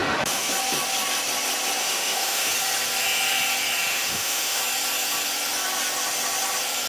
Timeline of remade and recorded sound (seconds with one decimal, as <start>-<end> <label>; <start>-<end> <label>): 0.0-0.5 remade; 0.5-1.8 recorded; 1.8-2.5 remade; 2.5-3.9 recorded; 3.9-4.6 remade; 4.6-6.9 recorded